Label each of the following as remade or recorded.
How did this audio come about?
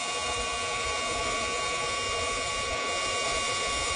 remade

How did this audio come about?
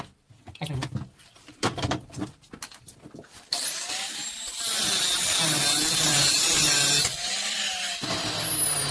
recorded